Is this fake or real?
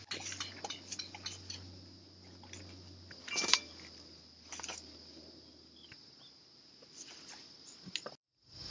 real